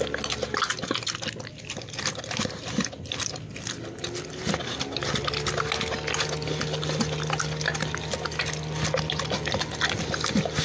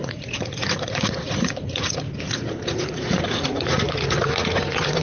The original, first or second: first